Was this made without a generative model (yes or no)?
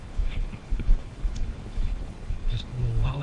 no